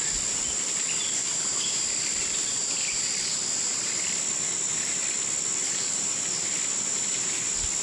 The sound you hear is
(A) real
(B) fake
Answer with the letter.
A